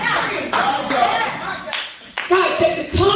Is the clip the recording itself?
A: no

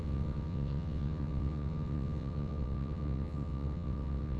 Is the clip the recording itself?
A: no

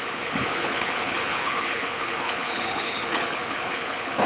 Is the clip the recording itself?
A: no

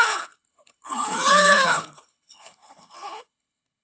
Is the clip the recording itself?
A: no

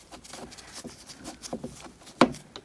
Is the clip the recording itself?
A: yes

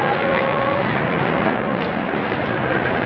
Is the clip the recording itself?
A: no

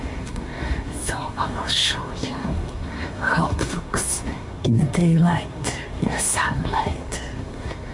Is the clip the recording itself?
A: no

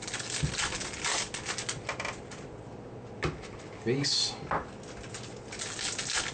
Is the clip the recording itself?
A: yes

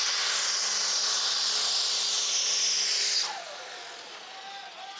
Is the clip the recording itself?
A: yes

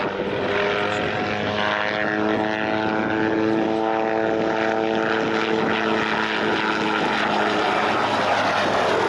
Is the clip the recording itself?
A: yes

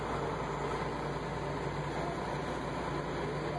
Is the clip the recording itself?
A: yes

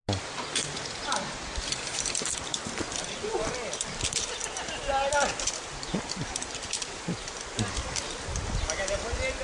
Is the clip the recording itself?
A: yes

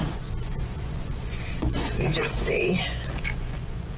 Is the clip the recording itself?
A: no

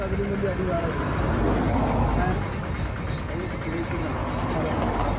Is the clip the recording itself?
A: yes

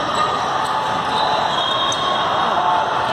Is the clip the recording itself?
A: yes